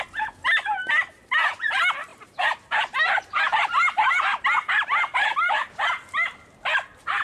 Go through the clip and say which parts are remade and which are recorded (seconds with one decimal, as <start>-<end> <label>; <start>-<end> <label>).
0.0-0.8 recorded; 0.8-1.7 remade; 1.7-2.1 recorded; 2.1-5.2 remade; 5.2-7.2 recorded

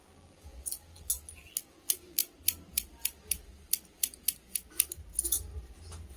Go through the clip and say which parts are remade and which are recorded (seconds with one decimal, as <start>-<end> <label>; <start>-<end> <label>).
0.0-2.2 remade; 2.2-6.2 recorded

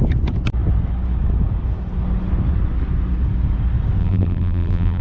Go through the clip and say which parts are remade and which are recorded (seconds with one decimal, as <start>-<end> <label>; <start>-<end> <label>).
0.0-4.0 recorded; 4.0-5.0 remade

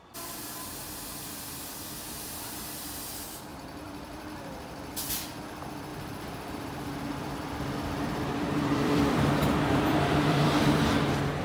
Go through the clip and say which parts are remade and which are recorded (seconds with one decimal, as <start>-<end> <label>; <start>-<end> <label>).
0.0-0.7 recorded; 0.7-3.0 remade; 3.0-3.5 recorded; 3.5-5.4 remade; 5.4-5.9 recorded; 5.9-10.8 remade; 10.8-11.4 recorded

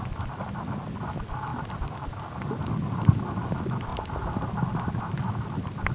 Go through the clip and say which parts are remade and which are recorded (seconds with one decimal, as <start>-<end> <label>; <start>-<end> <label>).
0.0-3.9 remade; 3.9-5.0 recorded; 5.0-5.9 remade

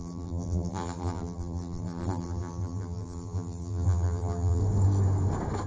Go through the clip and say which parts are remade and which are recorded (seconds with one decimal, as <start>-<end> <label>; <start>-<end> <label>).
0.0-4.6 remade; 4.6-5.7 recorded

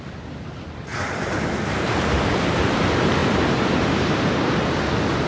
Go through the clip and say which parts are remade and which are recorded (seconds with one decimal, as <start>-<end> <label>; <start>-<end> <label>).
0.0-0.9 recorded; 0.9-2.8 remade; 2.8-3.2 recorded; 3.2-4.7 remade; 4.7-5.3 recorded

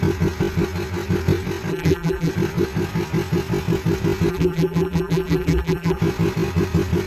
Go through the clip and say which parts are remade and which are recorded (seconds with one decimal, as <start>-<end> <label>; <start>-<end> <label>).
0.0-1.7 recorded; 1.7-2.3 remade; 2.3-4.3 recorded; 4.3-6.0 remade; 6.0-7.1 recorded